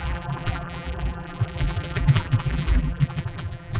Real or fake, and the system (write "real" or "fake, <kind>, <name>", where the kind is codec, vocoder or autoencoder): fake, vocoder, BigVGAN v2